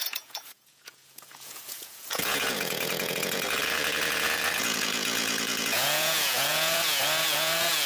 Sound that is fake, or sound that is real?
fake